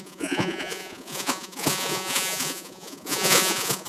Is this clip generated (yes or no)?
yes